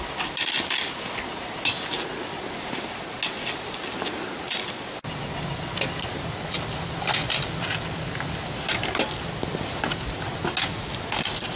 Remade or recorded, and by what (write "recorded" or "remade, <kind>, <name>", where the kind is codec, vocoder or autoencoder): recorded